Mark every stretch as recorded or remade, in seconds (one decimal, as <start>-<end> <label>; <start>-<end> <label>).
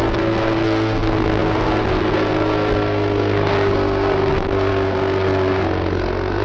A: 0.0-6.4 remade